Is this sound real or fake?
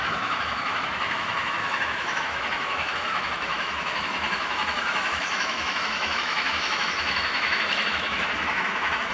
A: fake